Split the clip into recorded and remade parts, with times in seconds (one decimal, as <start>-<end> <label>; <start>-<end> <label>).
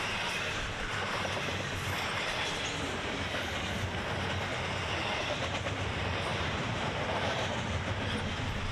0.0-6.3 recorded; 6.3-8.2 remade; 8.2-8.7 recorded